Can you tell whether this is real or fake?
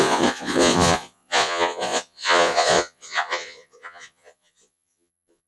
fake